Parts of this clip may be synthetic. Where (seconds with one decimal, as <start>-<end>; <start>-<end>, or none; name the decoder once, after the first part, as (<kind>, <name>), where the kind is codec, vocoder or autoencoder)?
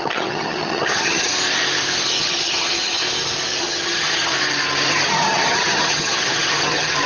0.0-1.3 (vocoder, HiFi-GAN); 2.2-3.0; 3.6-4.3; 4.9-7.1